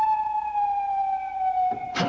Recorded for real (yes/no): yes